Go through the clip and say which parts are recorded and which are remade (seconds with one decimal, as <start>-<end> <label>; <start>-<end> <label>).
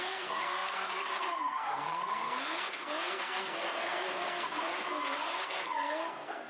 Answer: 0.0-6.5 remade